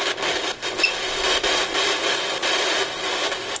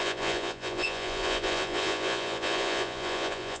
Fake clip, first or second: second